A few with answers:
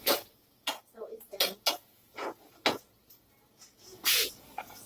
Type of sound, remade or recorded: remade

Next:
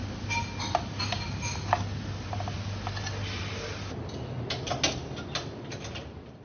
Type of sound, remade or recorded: recorded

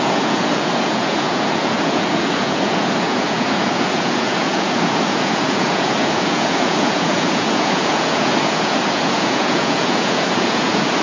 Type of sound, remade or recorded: remade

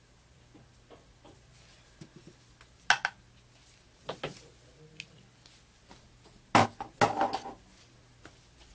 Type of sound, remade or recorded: recorded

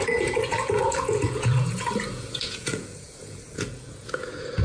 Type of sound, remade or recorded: remade